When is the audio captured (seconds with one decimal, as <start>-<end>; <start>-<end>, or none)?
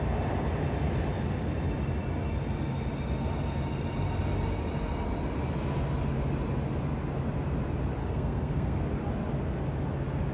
0.0-8.0; 8.8-10.3